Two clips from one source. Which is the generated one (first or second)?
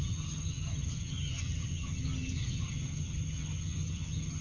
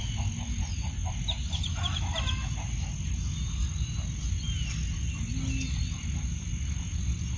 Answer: first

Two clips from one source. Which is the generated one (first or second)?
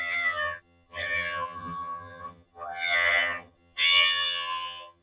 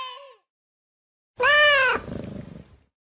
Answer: first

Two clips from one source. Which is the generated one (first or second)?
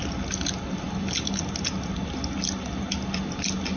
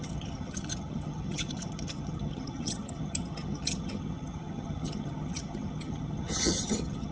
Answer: second